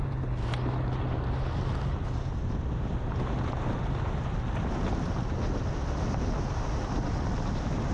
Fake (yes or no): no